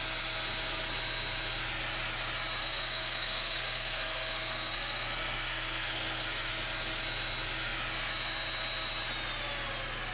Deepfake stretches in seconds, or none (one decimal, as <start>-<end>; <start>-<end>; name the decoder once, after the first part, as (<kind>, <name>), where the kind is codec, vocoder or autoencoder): 2.6-6.5 (codec, SNAC)